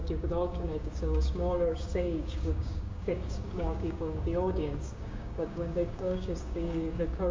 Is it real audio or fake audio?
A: fake